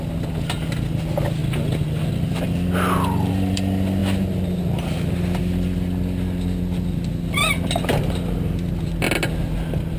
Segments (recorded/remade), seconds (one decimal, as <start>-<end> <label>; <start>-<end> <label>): 0.0-10.0 recorded